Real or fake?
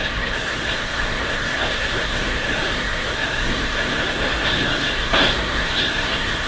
fake